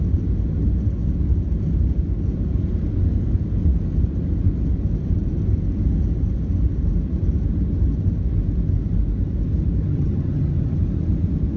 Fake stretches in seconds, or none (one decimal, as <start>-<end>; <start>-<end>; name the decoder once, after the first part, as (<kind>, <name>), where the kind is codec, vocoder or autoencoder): 9.8-10.8 (vocoder, HiFi-GAN)